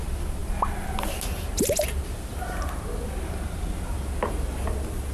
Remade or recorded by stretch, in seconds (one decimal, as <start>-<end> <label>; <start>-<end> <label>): 0.0-5.1 recorded